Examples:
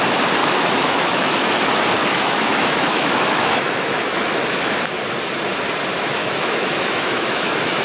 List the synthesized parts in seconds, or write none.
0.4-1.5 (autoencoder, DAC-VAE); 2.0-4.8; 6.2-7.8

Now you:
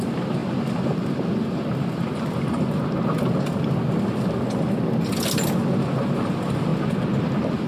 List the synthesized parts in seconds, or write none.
none

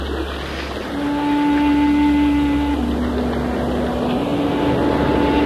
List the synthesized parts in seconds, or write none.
none

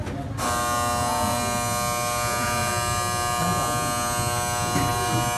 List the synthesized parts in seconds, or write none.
none

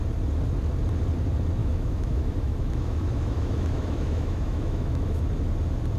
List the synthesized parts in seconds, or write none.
1.6-5.2 (autoencoder, DAC-VAE)

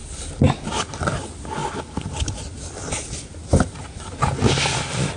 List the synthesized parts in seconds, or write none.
none

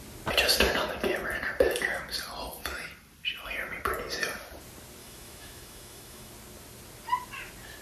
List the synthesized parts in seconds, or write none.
5.0-6.3 (autoencoder, DAC-VAE)